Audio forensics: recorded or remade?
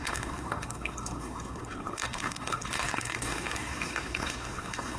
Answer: remade